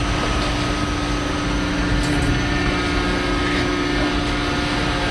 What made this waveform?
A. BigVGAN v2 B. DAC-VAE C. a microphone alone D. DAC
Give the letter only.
C